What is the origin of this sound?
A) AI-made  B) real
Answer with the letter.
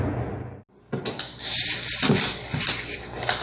B